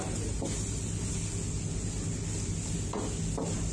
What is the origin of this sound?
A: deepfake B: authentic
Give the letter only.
B